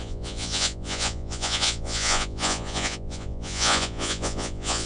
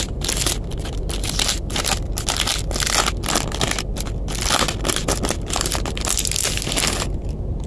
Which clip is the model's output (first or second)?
first